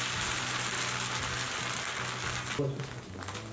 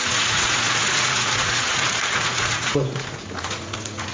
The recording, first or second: first